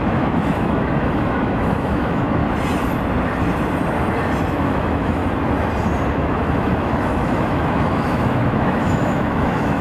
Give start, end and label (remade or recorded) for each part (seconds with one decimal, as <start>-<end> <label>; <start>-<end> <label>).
0.0-2.4 remade; 2.4-4.5 recorded; 4.5-5.2 remade; 5.2-6.1 recorded; 6.1-9.8 remade